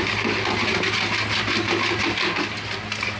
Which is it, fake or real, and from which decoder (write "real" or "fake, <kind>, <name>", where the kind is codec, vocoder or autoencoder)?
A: real